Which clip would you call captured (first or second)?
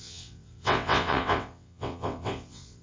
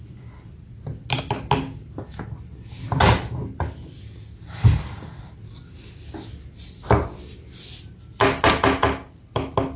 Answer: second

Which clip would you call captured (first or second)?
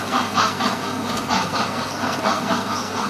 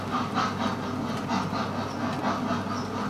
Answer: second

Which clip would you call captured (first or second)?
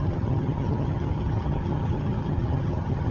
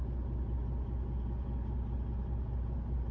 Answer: second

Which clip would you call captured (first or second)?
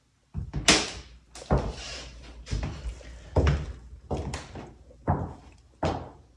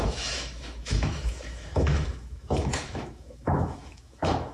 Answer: first